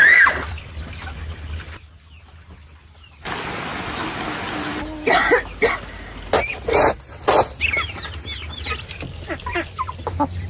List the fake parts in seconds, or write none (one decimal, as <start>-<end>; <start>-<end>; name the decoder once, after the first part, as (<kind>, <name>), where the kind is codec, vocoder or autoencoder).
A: 0.0-0.8 (vocoder, BigVGAN v2)